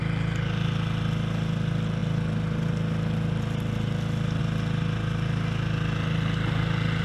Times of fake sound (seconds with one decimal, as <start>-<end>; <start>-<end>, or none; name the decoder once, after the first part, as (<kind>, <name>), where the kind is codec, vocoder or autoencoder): none